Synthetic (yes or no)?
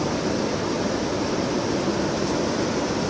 no